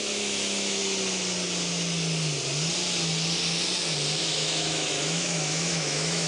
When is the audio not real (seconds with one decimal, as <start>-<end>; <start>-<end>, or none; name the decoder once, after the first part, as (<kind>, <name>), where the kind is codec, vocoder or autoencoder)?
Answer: 0.0-0.8 (autoencoder, DAC-VAE); 4.2-6.3